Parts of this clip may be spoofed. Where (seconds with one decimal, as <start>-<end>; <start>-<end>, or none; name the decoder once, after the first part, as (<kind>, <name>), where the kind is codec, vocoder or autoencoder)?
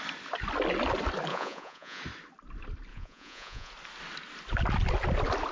1.3-2.0 (vocoder, Vocos); 2.9-3.7